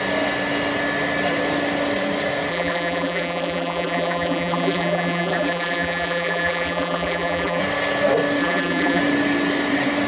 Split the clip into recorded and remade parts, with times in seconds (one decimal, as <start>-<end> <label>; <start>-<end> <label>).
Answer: 0.0-2.5 recorded; 2.5-7.6 remade; 7.6-8.4 recorded; 8.4-9.0 remade; 9.0-10.1 recorded

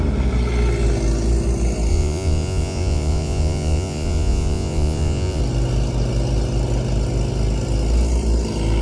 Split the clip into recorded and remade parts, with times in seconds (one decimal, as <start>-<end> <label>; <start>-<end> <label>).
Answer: 0.0-1.9 recorded; 1.9-5.4 remade; 5.4-8.8 recorded

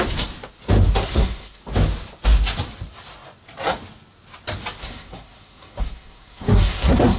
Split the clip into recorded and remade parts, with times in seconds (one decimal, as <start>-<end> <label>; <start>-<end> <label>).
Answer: 0.0-0.9 recorded; 0.9-1.6 remade; 1.6-4.8 recorded; 4.8-7.2 remade